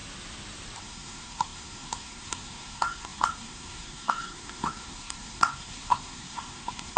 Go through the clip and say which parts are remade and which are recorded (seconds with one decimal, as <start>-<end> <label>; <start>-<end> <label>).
0.0-0.8 recorded; 0.8-7.0 remade